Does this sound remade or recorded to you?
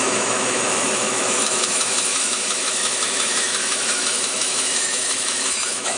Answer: remade